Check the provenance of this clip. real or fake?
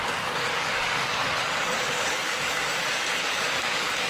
fake